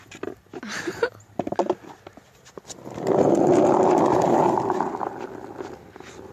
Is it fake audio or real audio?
real